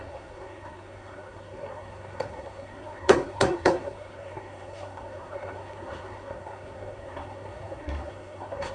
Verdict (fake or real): fake